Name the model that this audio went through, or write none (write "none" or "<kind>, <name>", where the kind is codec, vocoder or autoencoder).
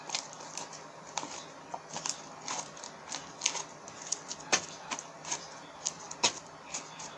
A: none